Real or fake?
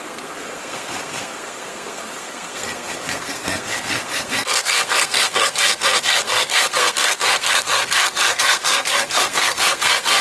fake